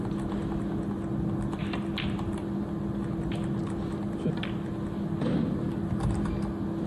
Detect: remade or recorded recorded